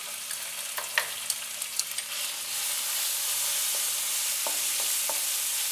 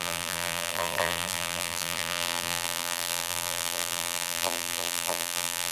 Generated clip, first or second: second